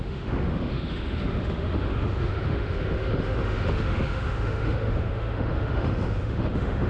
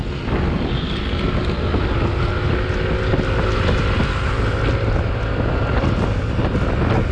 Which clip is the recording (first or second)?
second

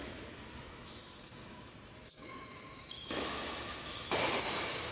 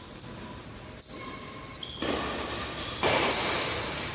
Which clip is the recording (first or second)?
second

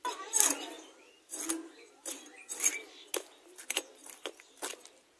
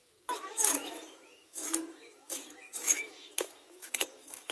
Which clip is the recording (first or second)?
first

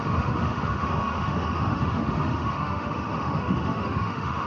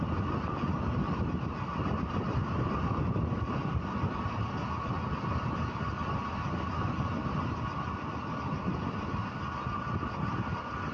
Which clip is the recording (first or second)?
second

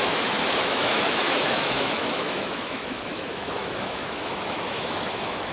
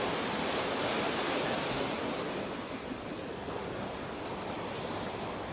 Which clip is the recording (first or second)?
second